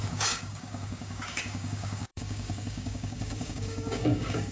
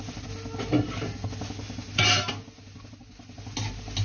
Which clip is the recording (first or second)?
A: second